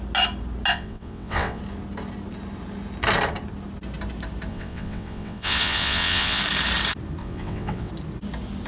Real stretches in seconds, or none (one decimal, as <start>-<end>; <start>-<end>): 0.0-0.7; 1.6-4.5; 6.4-7.2; 7.9-8.7